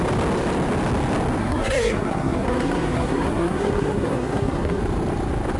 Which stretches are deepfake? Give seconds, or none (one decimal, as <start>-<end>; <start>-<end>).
1.4-4.8